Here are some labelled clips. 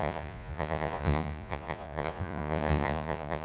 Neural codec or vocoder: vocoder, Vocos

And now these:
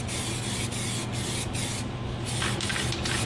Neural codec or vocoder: none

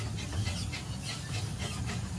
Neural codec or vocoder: none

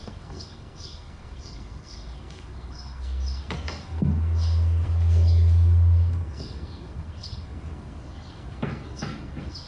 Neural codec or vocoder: codec, SNAC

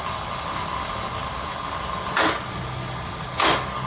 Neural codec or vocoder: none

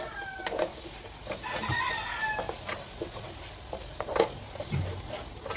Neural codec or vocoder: none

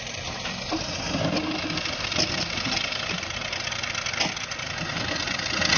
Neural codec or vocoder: none